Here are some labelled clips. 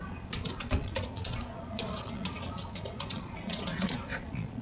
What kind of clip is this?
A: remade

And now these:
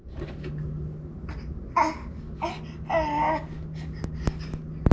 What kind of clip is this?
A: recorded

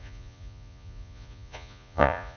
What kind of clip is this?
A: remade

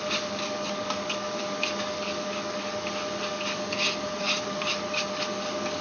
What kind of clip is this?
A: remade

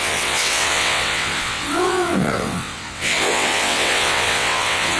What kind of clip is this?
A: remade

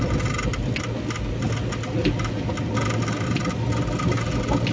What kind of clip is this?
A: recorded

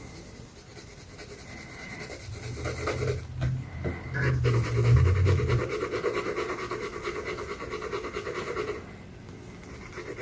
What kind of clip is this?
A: recorded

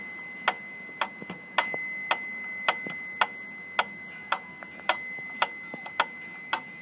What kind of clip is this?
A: recorded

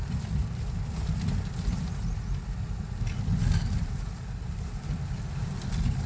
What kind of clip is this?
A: recorded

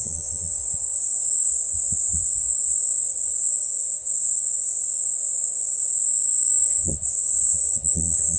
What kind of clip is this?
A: remade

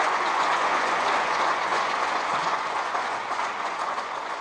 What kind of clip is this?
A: remade